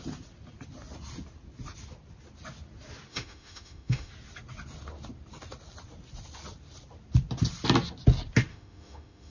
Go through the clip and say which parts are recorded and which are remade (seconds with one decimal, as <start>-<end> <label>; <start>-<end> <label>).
0.0-3.1 recorded; 3.1-4.1 remade; 4.1-8.5 recorded; 8.5-9.3 remade